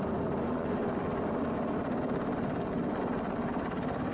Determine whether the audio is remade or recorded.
recorded